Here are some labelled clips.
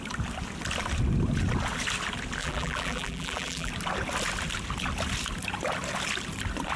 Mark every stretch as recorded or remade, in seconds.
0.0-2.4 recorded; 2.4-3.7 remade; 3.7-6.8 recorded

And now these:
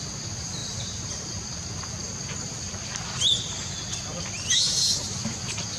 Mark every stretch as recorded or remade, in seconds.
0.0-0.6 recorded; 0.6-1.7 remade; 1.7-5.8 recorded

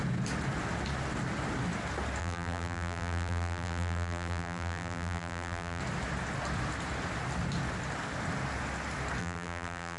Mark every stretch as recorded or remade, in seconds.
0.0-2.2 recorded; 2.2-5.8 remade; 5.8-9.2 recorded; 9.2-10.0 remade